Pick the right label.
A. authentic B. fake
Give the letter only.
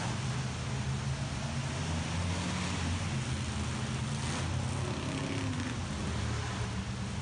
A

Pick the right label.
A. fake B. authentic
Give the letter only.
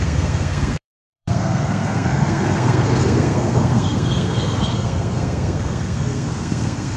A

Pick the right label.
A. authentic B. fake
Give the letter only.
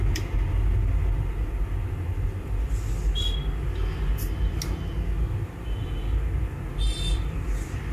A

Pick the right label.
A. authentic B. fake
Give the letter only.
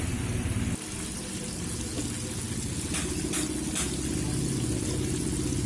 A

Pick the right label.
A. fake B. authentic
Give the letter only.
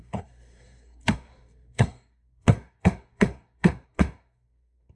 A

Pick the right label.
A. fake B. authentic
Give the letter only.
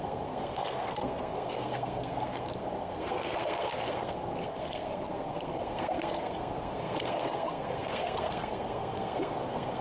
A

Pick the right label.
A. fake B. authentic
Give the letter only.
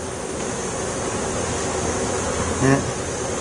B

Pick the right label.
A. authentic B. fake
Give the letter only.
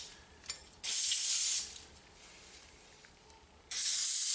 A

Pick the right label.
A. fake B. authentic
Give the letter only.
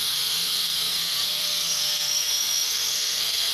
A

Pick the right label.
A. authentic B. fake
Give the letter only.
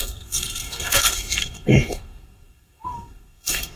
B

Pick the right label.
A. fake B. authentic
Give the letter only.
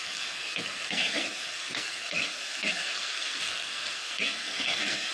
A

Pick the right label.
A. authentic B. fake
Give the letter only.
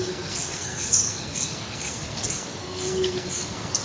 B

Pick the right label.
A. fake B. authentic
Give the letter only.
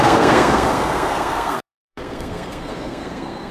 A